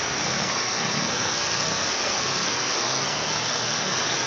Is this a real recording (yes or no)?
no